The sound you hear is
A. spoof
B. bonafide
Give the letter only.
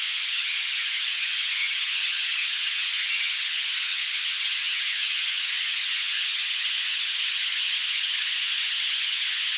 A